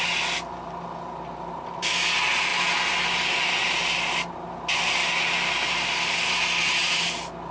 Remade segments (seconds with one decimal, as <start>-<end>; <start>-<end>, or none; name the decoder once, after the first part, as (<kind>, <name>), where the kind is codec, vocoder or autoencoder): none